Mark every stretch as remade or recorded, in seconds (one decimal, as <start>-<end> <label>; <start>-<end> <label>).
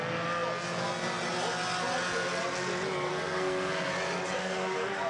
0.0-3.1 recorded; 3.1-3.9 remade; 3.9-4.4 recorded; 4.4-5.1 remade